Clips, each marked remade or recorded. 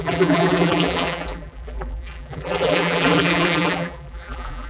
remade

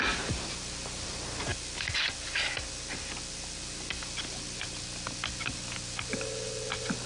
recorded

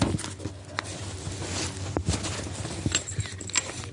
recorded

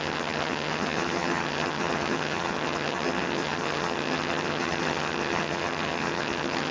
remade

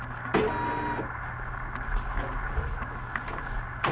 recorded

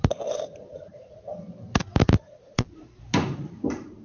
remade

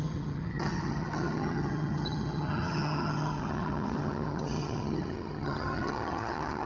remade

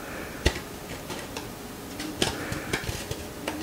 recorded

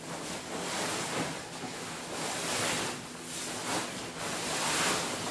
recorded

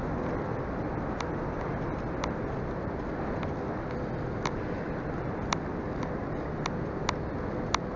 recorded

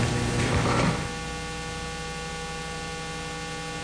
recorded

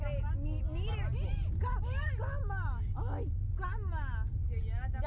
recorded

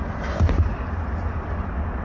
recorded